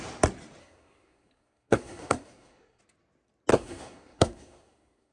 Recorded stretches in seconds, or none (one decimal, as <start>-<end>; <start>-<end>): 0.0-0.6; 2.8-3.5

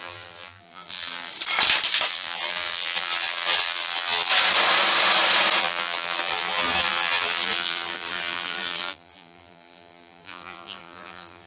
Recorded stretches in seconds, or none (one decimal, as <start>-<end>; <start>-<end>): 1.3-2.1; 4.3-5.6

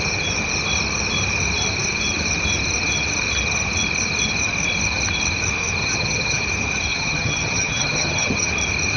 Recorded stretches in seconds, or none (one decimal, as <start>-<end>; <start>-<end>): 0.0-5.8; 6.4-6.9; 8.5-9.0

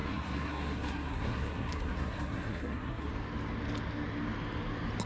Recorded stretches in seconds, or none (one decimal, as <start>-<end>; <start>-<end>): 3.1-5.1

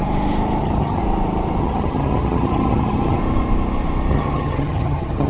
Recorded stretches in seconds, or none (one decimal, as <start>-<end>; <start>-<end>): 0.0-0.6; 1.0-1.6; 3.2-4.1

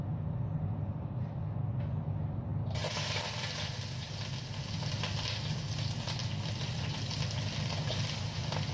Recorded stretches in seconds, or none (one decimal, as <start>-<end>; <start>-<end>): 0.0-8.7

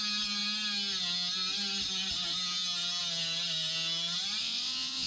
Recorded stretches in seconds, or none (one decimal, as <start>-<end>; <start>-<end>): 0.0-4.4

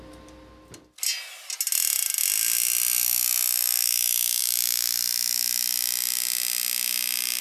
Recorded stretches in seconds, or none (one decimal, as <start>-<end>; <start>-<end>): 0.0-7.4